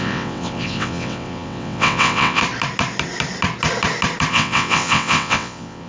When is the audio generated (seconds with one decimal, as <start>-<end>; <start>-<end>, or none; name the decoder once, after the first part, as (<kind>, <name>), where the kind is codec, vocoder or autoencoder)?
0.0-2.4 (vocoder, WaveNeXt); 4.3-5.9